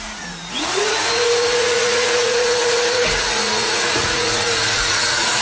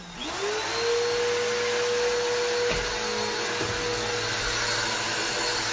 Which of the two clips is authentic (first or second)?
second